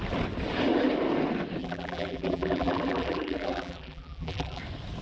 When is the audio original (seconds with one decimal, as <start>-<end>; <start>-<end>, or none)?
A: 0.0-1.6; 4.6-5.0